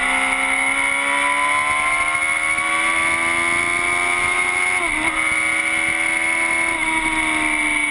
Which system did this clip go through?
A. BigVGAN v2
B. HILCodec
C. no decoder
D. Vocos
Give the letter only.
C